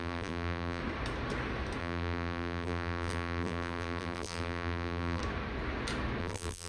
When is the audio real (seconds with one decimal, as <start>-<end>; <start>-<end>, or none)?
0.8-1.8; 5.2-6.2